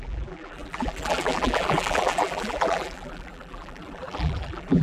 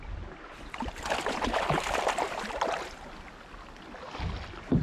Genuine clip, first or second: second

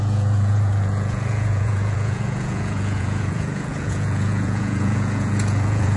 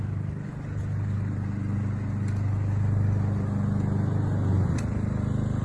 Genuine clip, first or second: second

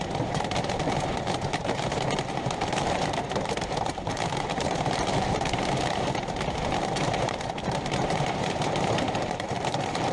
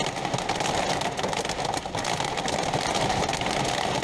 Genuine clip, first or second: second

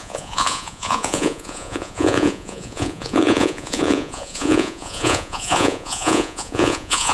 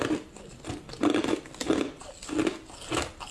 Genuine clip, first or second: second